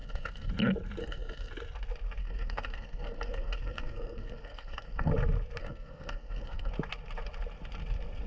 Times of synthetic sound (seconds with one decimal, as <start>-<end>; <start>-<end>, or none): 0.0-0.5; 1.0-1.5; 2.2-5.1; 5.6-6.7